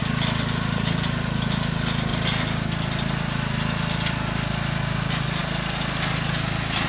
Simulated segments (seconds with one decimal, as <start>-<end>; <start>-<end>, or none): none